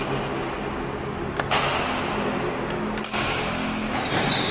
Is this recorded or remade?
recorded